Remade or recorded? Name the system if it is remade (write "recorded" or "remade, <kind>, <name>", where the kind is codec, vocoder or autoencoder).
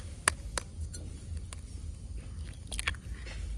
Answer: recorded